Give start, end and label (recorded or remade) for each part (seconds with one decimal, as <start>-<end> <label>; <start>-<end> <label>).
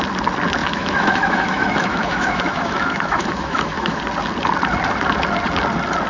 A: 0.0-0.6 recorded; 0.6-4.0 remade; 4.0-6.1 recorded